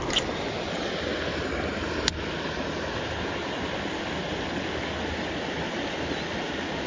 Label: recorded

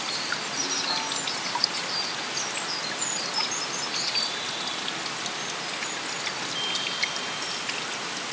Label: recorded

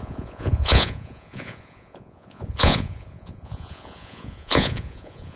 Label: remade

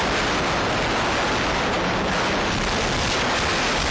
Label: recorded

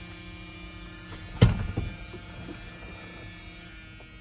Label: recorded